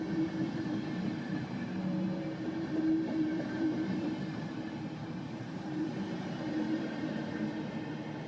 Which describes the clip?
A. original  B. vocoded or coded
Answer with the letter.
B